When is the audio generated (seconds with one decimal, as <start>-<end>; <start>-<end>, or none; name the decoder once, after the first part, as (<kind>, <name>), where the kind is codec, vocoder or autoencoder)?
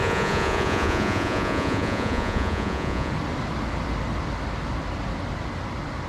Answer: 0.0-3.1 (vocoder, Vocos)